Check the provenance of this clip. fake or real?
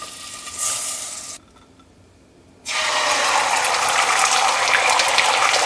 real